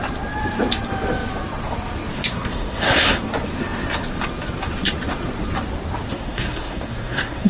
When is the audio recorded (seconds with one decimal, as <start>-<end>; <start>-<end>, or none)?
0.0-2.1; 3.3-6.1